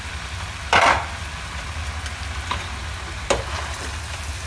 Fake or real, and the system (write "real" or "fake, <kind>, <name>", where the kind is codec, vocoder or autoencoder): fake, vocoder, BigVGAN v2